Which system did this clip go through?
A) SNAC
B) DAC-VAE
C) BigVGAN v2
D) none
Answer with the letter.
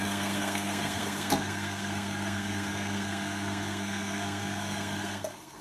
A